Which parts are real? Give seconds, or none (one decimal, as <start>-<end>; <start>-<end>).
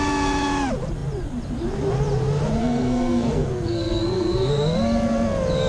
0.0-2.6; 4.5-5.7